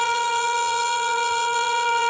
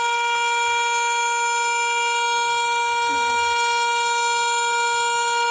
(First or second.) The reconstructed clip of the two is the first